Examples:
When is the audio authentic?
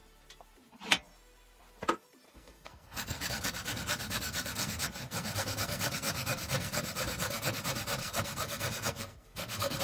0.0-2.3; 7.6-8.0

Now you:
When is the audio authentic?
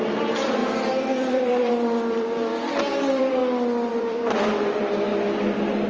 2.5-3.0; 3.4-3.9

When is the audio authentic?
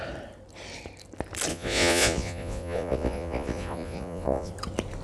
0.0-1.5; 4.5-5.0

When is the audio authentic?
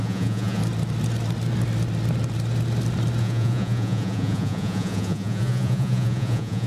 0.6-3.2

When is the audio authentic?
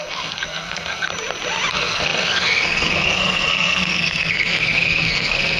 1.1-1.7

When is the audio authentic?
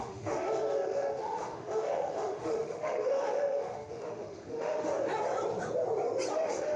4.9-6.3